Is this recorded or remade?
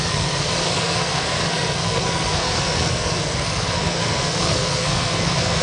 remade